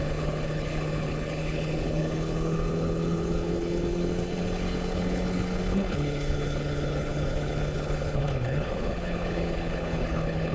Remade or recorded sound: remade